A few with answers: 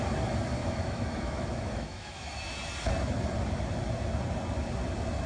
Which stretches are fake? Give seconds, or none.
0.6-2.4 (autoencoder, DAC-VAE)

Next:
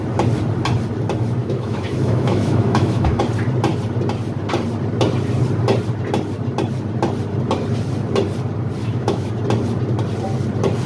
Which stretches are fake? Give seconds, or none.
1.4-3.2 (autoencoder, DAC-VAE); 8.8-9.3

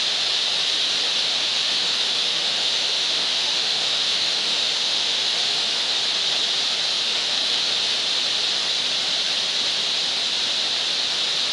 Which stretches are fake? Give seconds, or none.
1.2-5.9 (autoencoder, DAC-VAE); 6.9-7.7

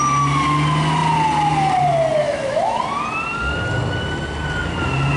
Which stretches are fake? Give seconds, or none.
2.2-2.8 (autoencoder, DAC-VAE)

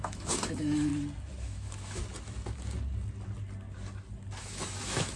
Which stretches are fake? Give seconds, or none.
0.0-0.9 (autoencoder, DAC-VAE); 1.4-2.0; 4.4-5.2

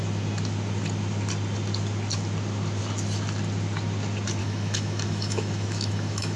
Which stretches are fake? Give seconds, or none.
4.4-6.4 (autoencoder, DAC-VAE)

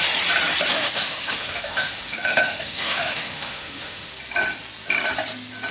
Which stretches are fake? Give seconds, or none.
0.7-4.1 (autoencoder, DAC-VAE)

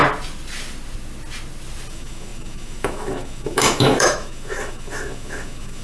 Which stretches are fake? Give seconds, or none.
1.9-5.8 (autoencoder, DAC-VAE)